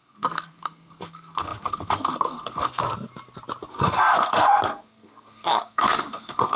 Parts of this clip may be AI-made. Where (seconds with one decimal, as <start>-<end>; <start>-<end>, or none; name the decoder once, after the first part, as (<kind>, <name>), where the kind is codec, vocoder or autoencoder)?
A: 0.0-2.8 (codec, SNAC); 3.7-6.6

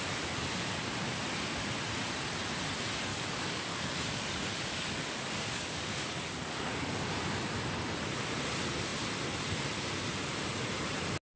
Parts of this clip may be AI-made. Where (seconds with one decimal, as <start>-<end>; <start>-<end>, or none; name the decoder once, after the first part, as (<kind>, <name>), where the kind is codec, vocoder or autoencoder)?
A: 3.1-7.1 (codec, DAC)

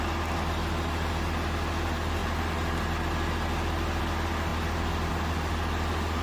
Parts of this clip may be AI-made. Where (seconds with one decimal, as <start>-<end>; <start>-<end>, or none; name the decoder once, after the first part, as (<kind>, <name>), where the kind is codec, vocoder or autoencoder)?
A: none

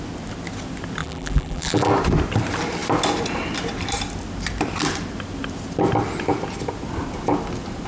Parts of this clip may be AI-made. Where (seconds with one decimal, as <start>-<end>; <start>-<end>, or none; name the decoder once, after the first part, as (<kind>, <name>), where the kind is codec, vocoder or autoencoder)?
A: 1.0-1.9 (vocoder, BigVGAN v2)

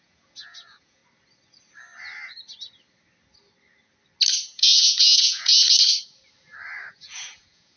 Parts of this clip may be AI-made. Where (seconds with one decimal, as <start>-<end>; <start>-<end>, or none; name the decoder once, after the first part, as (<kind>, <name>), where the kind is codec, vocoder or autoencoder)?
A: 0.0-1.0 (vocoder, Vocos); 4.4-5.5; 6.9-7.8